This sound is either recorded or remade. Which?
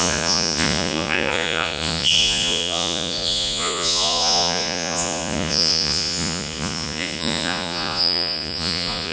remade